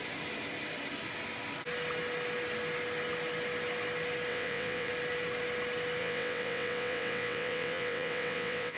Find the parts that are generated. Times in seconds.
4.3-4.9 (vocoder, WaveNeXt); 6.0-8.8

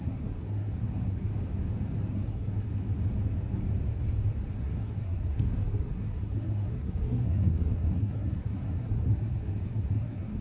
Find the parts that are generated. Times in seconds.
0.0-1.3 (codec, SNAC); 2.1-2.7; 4.5-10.4

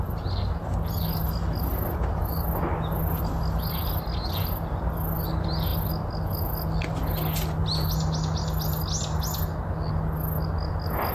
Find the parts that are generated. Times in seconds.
none

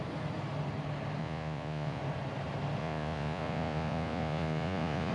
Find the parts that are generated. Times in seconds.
1.2-2.0 (vocoder, Vocos); 2.8-5.1

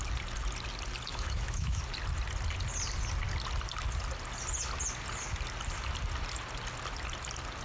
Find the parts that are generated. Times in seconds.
1.1-1.8 (autoencoder, DAC-VAE)

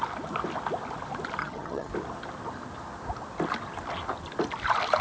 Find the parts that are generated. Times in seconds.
1.4-1.9 (vocoder, HiFi-GAN)